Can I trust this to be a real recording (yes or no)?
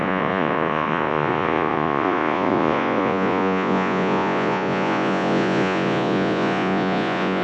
no